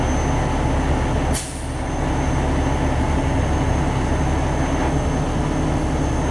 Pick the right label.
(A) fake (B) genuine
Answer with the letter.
B